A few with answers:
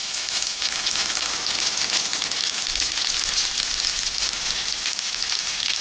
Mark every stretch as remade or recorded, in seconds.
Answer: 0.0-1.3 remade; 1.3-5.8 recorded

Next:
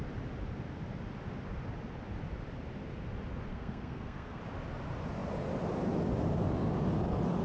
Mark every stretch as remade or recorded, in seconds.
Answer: 0.0-3.5 recorded; 3.5-4.4 remade; 4.4-7.4 recorded

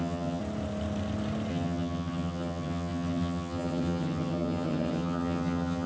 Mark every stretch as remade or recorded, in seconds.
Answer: 0.0-0.4 remade; 0.4-1.5 recorded; 1.5-5.9 remade

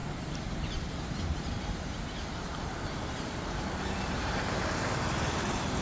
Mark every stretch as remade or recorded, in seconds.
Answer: 0.0-5.8 remade

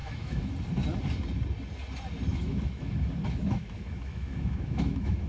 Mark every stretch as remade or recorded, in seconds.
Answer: 0.0-0.5 remade; 0.5-2.3 recorded; 2.3-5.3 remade

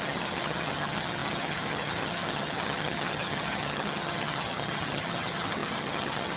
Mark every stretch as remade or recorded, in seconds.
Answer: 0.0-6.4 remade

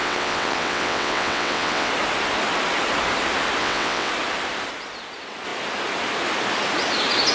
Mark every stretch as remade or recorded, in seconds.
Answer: 0.0-1.9 remade; 1.9-3.6 recorded; 3.6-4.1 remade; 4.1-7.3 recorded

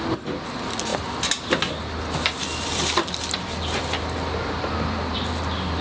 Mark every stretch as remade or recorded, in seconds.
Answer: 0.0-5.8 recorded